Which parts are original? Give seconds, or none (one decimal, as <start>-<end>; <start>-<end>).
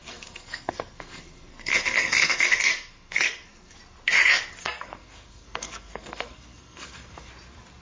3.8-4.6; 7.3-7.8